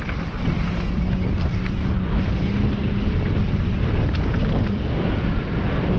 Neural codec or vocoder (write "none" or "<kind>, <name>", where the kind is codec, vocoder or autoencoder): none